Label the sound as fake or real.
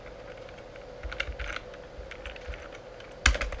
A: real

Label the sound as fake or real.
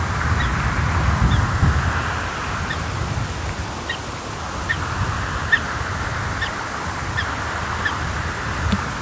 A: real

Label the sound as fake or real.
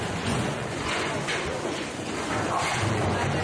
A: fake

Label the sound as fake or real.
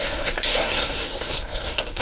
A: fake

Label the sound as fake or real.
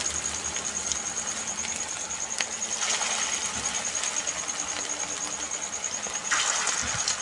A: real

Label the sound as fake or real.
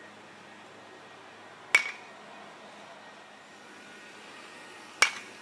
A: real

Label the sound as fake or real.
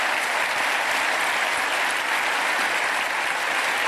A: real